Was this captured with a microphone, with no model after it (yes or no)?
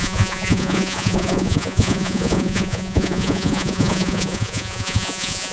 no